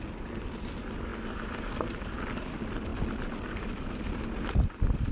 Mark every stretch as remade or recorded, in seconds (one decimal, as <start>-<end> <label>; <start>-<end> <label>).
0.0-5.1 recorded